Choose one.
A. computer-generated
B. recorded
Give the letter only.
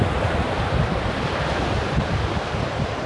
B